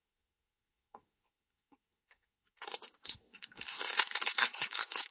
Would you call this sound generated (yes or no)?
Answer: yes